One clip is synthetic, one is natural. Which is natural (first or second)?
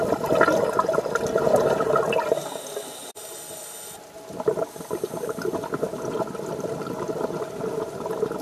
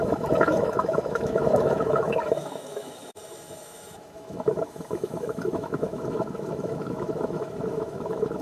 first